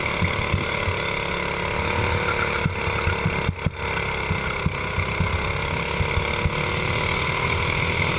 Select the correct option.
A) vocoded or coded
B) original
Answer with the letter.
B